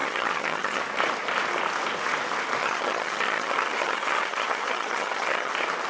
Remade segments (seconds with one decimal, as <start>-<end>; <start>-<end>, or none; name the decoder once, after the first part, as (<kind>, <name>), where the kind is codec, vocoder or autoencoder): 0.0-0.8 (vocoder, HiFi-GAN); 2.6-5.5